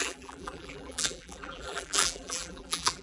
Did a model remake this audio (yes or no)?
yes